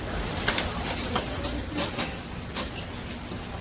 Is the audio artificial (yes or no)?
no